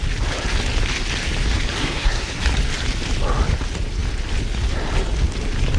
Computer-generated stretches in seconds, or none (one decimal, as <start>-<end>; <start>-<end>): 1.8-2.4